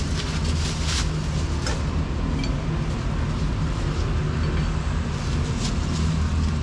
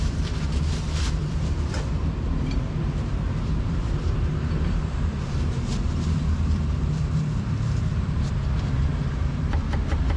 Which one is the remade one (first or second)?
second